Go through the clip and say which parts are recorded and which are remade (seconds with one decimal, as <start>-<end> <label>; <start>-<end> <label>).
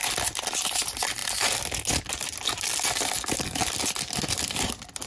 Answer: 0.0-5.1 recorded